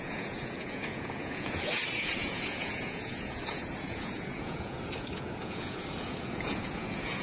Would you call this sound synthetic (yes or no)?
yes